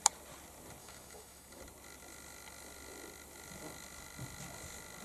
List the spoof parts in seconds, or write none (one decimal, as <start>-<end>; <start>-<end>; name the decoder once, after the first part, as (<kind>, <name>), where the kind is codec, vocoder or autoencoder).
0.8-1.6 (autoencoder, DAC-VAE)